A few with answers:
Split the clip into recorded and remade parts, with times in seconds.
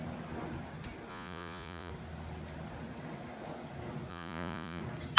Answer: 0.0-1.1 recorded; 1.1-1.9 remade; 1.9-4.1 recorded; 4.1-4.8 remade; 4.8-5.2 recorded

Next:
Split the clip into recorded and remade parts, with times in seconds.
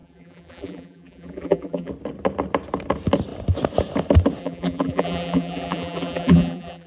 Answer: 0.0-1.9 remade; 1.9-4.4 recorded; 4.4-6.9 remade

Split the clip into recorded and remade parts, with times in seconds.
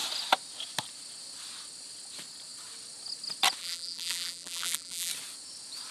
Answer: 0.0-3.6 recorded; 3.6-5.1 remade; 5.1-5.9 recorded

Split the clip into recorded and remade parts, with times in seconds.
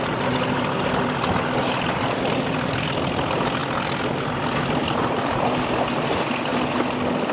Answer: 0.0-7.3 recorded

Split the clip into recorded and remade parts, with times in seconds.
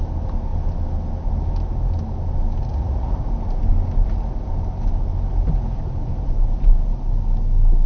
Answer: 0.0-2.7 recorded; 2.7-3.2 remade; 3.2-7.9 recorded